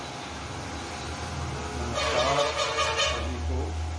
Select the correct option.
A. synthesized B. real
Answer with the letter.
B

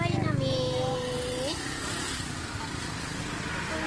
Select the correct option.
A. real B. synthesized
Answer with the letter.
A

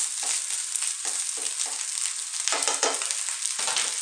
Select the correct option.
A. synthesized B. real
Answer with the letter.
B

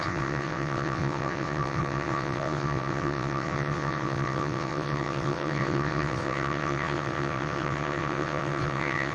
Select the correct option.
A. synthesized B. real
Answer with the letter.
A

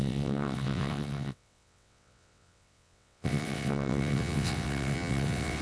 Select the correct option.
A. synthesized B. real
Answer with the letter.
A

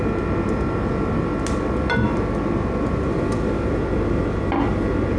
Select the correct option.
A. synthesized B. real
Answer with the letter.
B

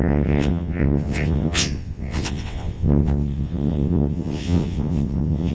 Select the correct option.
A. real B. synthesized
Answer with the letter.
B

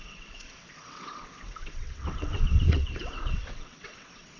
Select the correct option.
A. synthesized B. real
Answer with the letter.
A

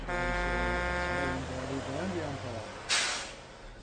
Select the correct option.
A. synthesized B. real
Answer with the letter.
B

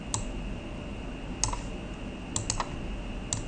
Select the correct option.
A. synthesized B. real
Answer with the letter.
B